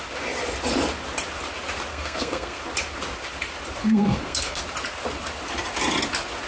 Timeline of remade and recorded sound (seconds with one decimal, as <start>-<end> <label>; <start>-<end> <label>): 0.0-1.9 recorded; 1.9-2.6 remade; 2.6-3.8 recorded; 3.8-4.6 remade; 4.6-6.5 recorded